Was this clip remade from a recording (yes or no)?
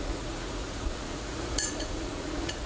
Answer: yes